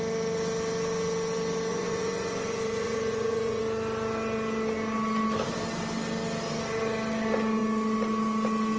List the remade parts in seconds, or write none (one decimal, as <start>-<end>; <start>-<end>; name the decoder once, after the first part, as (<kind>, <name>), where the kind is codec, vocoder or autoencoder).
1.7-3.6 (vocoder, Vocos)